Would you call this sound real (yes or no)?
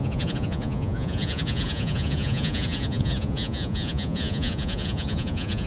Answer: no